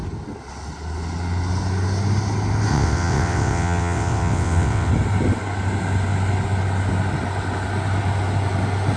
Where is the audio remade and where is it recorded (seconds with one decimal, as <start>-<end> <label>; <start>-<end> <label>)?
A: 0.0-2.7 recorded; 2.7-4.9 remade; 4.9-9.0 recorded